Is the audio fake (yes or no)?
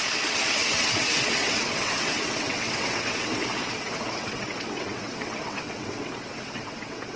yes